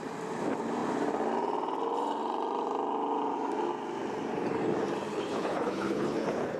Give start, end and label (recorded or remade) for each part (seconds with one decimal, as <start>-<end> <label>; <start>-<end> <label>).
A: 0.0-5.1 recorded; 5.1-6.6 remade